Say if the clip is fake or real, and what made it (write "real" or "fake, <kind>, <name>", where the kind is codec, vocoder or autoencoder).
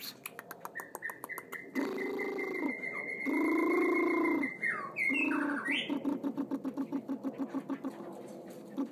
real